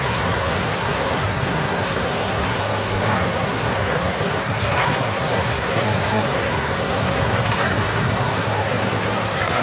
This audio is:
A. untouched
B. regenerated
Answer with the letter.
B